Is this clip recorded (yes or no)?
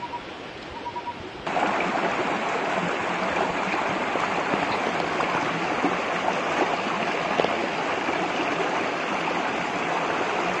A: yes